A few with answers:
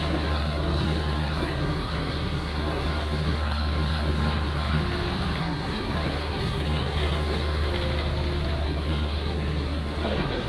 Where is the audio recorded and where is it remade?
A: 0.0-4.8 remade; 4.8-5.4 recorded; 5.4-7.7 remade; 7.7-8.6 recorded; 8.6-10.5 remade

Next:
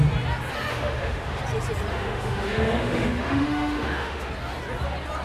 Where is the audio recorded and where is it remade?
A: 0.0-0.7 recorded; 0.7-1.4 remade; 1.4-1.9 recorded; 1.9-4.3 remade; 4.3-5.2 recorded